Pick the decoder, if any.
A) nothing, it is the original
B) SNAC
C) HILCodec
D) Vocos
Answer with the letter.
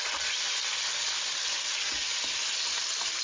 A